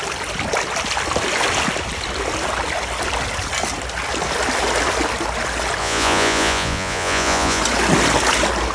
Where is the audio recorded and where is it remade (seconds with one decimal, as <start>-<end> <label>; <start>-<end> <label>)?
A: 0.0-5.8 recorded; 5.8-7.6 remade; 7.6-8.7 recorded